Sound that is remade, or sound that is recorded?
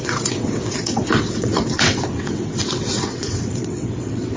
remade